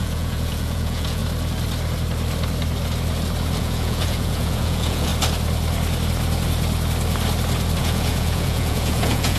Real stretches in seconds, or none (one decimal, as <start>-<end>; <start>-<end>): 1.2-3.6; 5.1-7.8